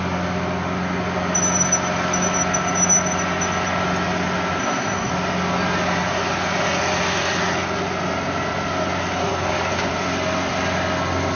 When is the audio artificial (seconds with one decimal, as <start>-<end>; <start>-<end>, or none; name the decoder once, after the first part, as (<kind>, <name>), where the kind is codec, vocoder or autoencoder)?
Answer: 4.6-5.1 (codec, SNAC)